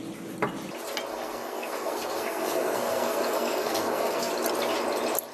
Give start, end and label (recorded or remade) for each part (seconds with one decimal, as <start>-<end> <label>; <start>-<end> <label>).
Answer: 0.0-1.1 recorded; 1.1-4.3 remade; 4.3-5.3 recorded